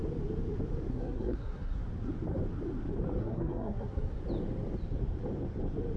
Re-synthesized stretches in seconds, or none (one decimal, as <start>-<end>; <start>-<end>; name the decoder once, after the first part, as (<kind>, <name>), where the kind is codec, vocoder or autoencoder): 0.9-1.8 (codec, SNAC); 3.2-4.2